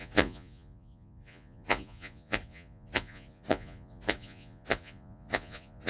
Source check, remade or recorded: remade